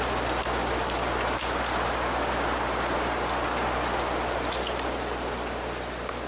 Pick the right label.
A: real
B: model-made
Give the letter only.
A